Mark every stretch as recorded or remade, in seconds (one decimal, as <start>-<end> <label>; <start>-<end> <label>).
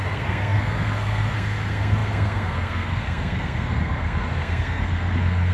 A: 0.0-5.5 remade